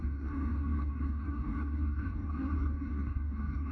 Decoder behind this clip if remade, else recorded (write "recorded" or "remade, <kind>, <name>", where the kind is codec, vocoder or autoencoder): remade, codec, DAC